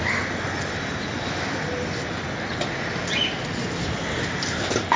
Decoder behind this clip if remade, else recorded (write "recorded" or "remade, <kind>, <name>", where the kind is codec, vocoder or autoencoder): recorded